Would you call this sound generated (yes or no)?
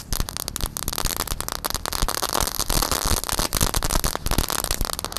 no